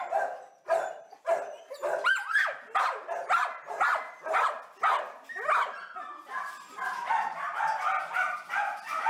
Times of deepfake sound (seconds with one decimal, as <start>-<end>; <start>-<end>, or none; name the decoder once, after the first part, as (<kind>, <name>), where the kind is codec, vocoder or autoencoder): none